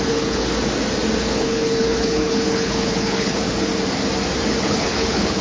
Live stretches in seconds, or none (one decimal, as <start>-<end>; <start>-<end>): 0.4-1.2; 3.7-4.6